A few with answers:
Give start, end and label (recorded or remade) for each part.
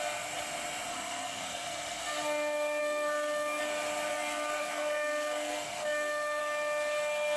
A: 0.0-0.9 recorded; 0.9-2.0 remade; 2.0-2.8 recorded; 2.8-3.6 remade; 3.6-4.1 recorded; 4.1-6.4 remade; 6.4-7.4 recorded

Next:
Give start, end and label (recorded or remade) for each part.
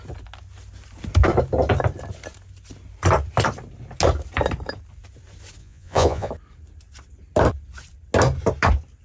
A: 0.0-5.6 recorded; 5.6-6.3 remade; 6.3-9.0 recorded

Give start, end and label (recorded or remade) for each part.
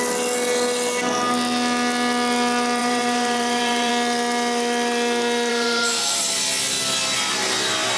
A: 0.0-2.8 recorded; 2.8-3.9 remade; 3.9-5.5 recorded; 5.5-6.2 remade; 6.2-8.0 recorded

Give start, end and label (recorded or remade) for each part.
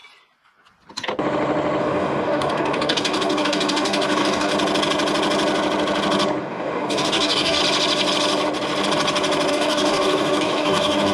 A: 0.0-1.8 recorded; 1.8-4.5 remade; 4.5-6.4 recorded; 6.4-7.6 remade; 7.6-9.5 recorded; 9.5-11.1 remade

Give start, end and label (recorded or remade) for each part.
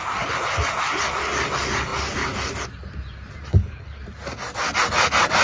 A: 0.0-3.5 recorded; 3.5-4.0 remade; 4.0-5.4 recorded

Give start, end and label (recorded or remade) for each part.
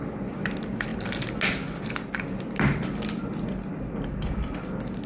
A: 0.0-5.1 recorded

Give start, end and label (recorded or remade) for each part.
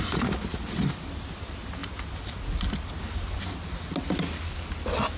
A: 0.0-5.2 recorded